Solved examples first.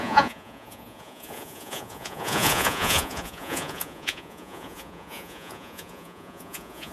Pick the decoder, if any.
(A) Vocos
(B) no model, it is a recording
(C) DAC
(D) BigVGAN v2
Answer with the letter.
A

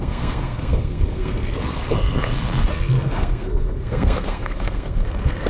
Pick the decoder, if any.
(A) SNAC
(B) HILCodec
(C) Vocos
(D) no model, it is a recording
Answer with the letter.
A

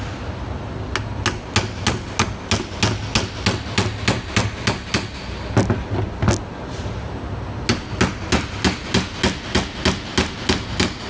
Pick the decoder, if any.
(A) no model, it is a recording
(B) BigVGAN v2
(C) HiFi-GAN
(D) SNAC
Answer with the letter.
A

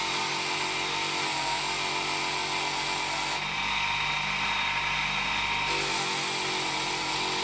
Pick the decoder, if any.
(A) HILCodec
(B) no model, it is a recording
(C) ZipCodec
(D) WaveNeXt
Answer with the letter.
B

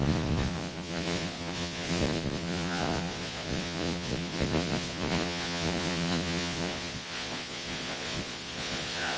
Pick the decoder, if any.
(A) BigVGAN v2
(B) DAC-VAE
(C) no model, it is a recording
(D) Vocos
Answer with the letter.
D